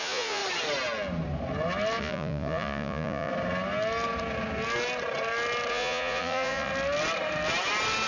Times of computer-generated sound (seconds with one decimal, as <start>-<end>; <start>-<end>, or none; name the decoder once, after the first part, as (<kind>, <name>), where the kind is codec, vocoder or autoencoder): 0.0-0.4 (vocoder, Vocos); 2.0-3.3; 5.7-6.7